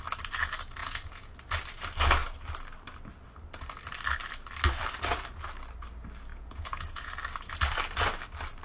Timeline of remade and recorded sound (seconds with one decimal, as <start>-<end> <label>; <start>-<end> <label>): 0.0-0.8 recorded; 0.8-1.3 remade; 1.3-6.3 recorded; 6.3-7.1 remade; 7.1-8.6 recorded